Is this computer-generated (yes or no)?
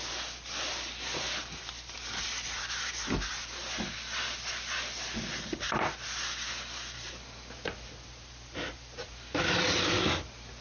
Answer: no